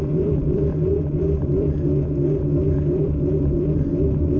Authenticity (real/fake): fake